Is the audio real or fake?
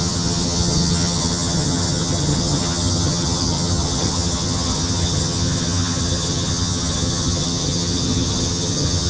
fake